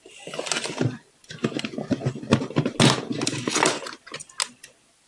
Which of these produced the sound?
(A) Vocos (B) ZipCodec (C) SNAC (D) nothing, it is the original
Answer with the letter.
D